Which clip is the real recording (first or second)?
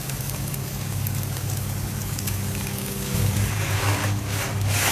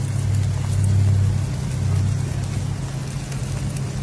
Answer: second